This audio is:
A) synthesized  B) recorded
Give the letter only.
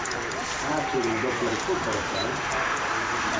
A